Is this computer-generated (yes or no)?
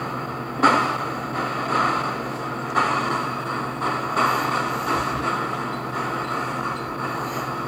no